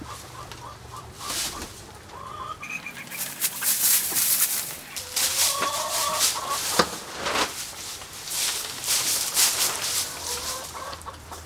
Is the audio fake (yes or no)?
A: yes